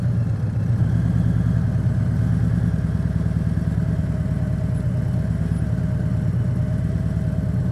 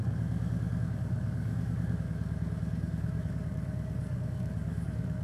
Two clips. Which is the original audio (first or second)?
first